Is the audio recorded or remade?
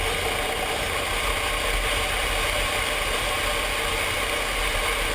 recorded